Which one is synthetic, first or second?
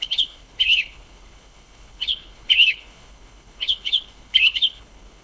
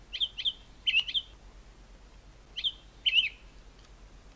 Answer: first